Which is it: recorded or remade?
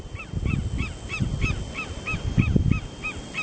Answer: recorded